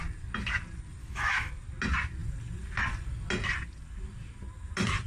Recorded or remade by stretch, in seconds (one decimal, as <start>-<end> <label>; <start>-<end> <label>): 0.0-1.0 recorded; 1.0-1.5 remade; 1.5-5.1 recorded